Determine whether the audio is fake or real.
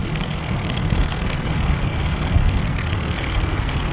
fake